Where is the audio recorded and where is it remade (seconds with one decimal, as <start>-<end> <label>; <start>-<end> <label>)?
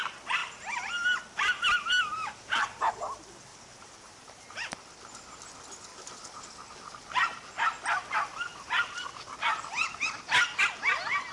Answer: 0.0-0.4 recorded; 0.4-2.9 remade; 2.9-3.5 recorded; 3.5-4.7 remade; 4.7-11.3 recorded